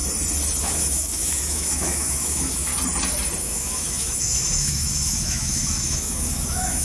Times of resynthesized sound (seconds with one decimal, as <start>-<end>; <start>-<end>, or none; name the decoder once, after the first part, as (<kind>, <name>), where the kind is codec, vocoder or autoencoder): 0.6-2.7 (autoencoder, DAC-VAE); 3.4-6.8